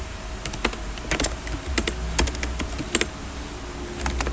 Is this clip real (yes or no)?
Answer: yes